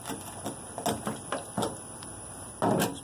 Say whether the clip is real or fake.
real